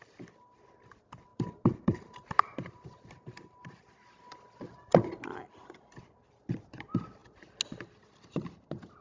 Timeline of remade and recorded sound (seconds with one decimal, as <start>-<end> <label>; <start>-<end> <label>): 0.0-1.3 recorded; 1.3-3.8 remade; 3.8-9.0 recorded